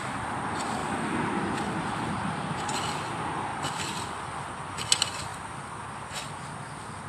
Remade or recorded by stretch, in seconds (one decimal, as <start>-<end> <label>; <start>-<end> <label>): 0.0-7.1 recorded